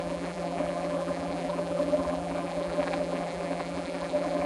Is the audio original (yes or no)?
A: no